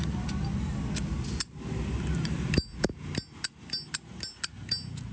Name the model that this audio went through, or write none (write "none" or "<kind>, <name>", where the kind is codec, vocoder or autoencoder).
none